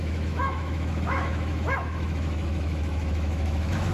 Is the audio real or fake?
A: fake